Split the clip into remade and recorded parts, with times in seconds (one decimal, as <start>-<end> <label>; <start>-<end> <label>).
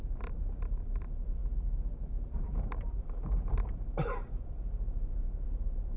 0.0-6.0 remade